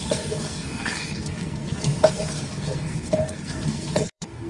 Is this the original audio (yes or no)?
no